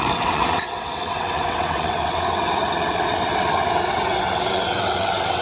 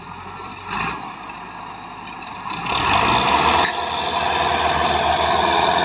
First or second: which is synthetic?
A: first